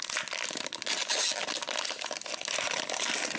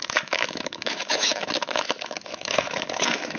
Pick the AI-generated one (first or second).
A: second